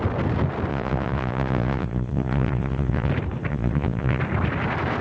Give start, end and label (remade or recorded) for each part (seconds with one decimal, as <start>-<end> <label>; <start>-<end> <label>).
0.0-0.7 recorded; 0.7-3.1 remade; 3.1-3.5 recorded; 3.5-4.2 remade; 4.2-5.0 recorded